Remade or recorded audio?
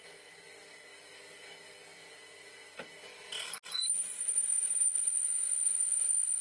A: recorded